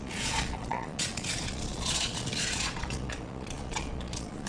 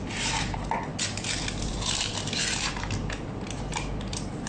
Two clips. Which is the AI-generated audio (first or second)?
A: first